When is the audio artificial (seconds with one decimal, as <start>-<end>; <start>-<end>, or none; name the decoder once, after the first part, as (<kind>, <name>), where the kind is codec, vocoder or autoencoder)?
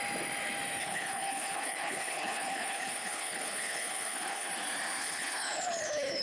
0.8-4.5 (codec, HILCodec); 5.0-6.2